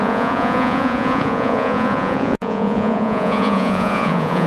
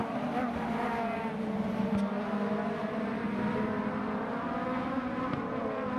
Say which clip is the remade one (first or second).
first